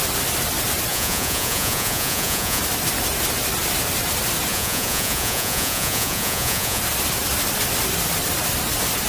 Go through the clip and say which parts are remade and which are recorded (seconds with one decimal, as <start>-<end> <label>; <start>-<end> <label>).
0.0-0.9 recorded; 0.9-2.6 remade; 2.6-4.5 recorded; 4.5-6.8 remade; 6.8-9.1 recorded